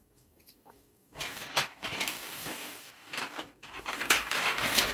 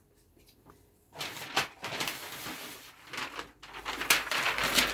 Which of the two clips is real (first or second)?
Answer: second